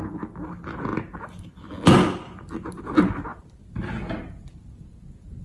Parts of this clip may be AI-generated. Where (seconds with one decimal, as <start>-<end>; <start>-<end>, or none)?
none